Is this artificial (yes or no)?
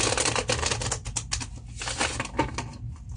no